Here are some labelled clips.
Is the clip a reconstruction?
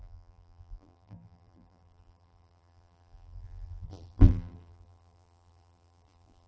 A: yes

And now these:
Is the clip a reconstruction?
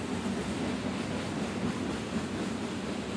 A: no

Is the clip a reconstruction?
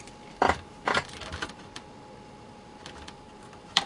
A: yes